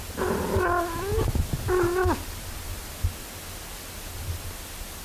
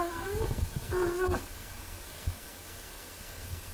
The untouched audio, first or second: first